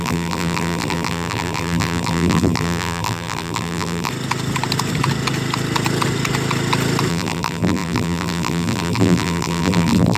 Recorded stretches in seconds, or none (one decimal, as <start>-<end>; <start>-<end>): 4.1-7.1